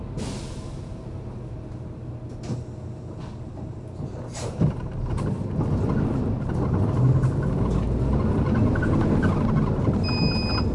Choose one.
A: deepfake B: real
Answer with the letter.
B